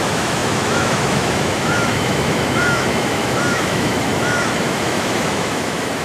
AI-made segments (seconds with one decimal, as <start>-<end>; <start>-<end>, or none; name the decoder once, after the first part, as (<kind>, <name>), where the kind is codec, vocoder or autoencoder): 0.0-6.0 (autoencoder, DAC-VAE)